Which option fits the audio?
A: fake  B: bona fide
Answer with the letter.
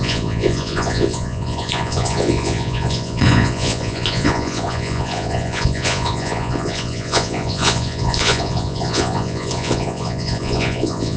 A